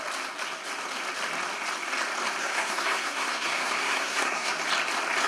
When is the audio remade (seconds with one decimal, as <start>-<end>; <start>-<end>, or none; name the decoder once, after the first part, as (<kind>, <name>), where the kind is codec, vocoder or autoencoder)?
2.4-4.5 (codec, SNAC)